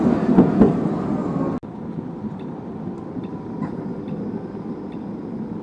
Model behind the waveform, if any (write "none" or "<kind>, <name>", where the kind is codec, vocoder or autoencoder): none